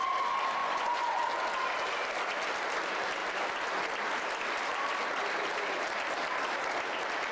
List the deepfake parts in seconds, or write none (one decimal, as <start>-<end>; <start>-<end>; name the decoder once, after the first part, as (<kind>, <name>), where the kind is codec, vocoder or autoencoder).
0.6-1.2 (vocoder, Vocos)